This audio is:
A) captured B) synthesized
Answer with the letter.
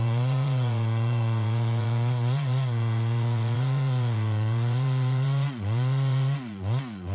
B